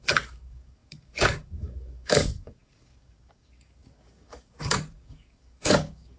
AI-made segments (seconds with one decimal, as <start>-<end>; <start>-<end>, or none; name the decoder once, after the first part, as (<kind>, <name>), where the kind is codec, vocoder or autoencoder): 0.0-6.2 (codec, DAC)

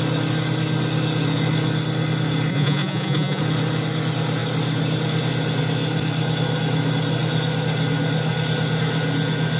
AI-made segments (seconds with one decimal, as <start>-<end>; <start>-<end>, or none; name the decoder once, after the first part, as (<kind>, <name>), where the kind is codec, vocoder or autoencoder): 2.5-3.4 (vocoder, Vocos)

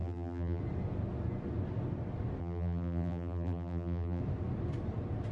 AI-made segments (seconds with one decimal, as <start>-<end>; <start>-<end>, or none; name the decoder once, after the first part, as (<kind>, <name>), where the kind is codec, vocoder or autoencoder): 0.0-0.6 (vocoder, BigVGAN v2); 2.4-4.2